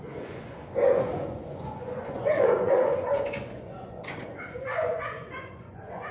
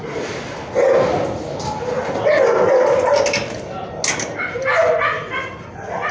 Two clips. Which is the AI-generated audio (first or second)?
first